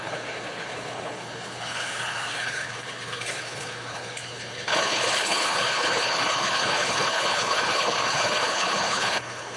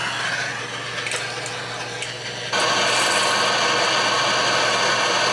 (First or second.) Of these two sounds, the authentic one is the second